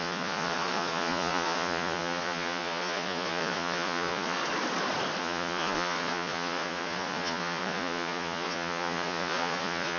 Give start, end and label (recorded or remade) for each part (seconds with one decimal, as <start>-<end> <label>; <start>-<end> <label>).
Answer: 0.0-4.4 remade; 4.4-5.2 recorded; 5.2-10.0 remade